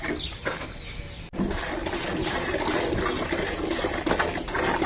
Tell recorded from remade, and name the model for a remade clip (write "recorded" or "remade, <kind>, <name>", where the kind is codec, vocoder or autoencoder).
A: recorded